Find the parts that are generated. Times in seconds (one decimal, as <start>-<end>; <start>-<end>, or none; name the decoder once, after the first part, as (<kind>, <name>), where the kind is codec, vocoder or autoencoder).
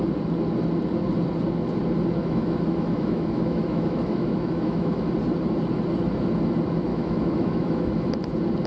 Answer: 2.2-5.1 (autoencoder, DAC-VAE); 6.9-8.1